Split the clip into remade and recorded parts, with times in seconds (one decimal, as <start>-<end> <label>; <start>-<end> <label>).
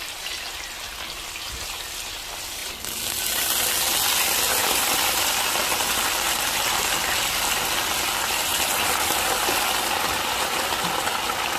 0.0-11.6 recorded